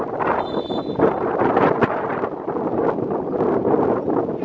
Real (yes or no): yes